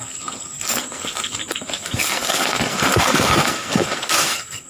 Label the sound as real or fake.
fake